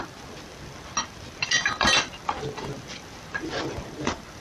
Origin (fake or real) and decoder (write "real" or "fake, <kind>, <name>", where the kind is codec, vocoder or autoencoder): real